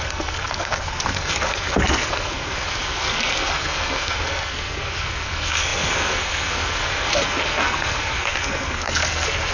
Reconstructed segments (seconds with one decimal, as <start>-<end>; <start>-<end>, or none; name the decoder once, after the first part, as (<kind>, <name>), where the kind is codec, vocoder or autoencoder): 0.0-9.5 (codec, SNAC)